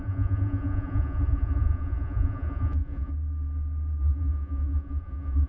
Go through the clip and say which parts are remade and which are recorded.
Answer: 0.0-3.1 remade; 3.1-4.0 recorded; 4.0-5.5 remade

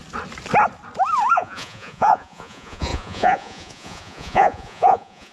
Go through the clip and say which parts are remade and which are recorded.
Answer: 0.0-1.3 recorded; 1.3-5.3 remade

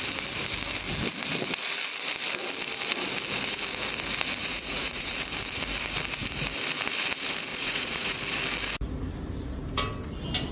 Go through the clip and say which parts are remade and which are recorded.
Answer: 0.0-4.4 recorded; 4.4-5.1 remade; 5.1-7.5 recorded; 7.5-8.2 remade; 8.2-10.5 recorded